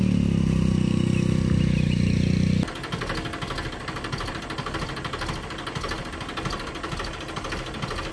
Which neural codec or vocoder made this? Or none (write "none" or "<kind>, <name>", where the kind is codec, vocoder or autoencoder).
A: none